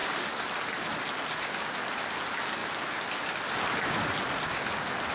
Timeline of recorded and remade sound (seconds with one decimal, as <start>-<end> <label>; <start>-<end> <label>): 0.0-5.1 recorded